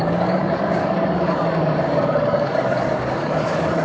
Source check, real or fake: fake